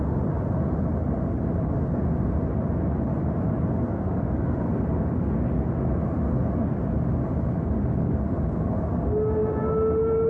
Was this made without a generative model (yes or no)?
yes